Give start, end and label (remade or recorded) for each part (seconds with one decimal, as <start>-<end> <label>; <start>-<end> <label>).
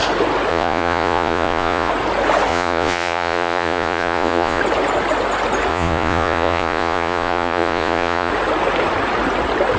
0.0-0.5 recorded; 0.5-1.9 remade; 1.9-2.5 recorded; 2.5-4.6 remade; 4.6-5.7 recorded; 5.7-8.3 remade; 8.3-9.8 recorded